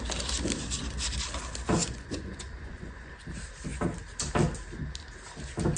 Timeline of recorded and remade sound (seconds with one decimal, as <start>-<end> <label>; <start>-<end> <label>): 0.0-1.8 recorded; 1.8-3.1 remade; 3.1-5.8 recorded